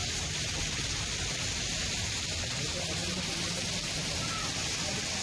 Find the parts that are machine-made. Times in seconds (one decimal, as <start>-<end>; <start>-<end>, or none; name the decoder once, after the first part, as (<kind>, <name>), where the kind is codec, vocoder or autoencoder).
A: none